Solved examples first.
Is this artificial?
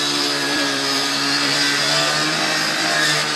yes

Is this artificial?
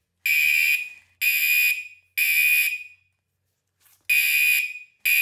no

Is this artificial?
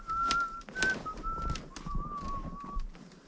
no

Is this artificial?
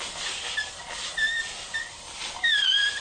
no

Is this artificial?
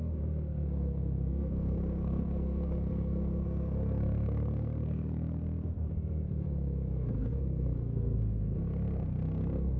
yes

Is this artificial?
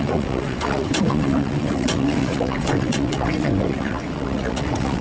yes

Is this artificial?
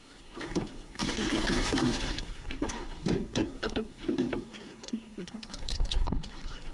yes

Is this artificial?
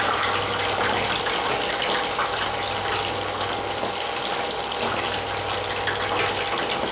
no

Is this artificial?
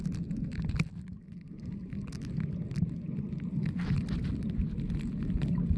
no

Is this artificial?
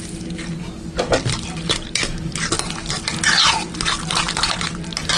no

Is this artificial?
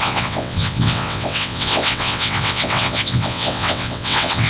yes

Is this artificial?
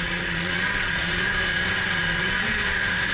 yes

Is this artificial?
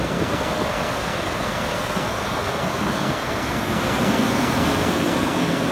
yes